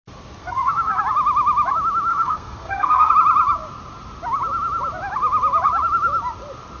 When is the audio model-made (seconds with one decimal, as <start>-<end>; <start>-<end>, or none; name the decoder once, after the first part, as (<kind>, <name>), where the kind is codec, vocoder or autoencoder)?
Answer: 0.4-1.0 (codec, SNAC); 2.1-3.1